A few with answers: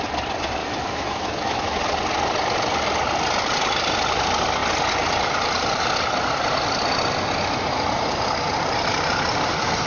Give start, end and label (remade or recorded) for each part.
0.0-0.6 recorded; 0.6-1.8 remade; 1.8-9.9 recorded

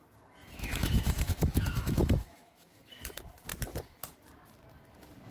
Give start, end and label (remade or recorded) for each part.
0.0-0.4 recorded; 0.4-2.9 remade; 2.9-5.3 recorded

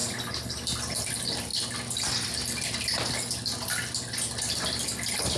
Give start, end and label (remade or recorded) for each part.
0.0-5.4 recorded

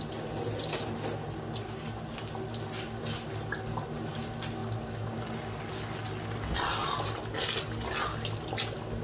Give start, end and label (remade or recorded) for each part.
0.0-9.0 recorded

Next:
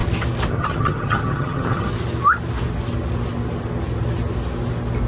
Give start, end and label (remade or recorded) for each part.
0.0-0.5 recorded; 0.5-1.9 remade; 1.9-5.1 recorded